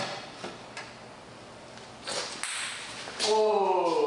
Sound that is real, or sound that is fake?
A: real